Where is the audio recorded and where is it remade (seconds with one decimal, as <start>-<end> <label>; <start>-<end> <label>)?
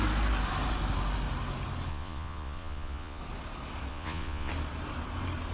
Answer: 0.0-1.9 recorded; 1.9-3.2 remade; 3.2-3.9 recorded; 3.9-4.5 remade; 4.5-5.5 recorded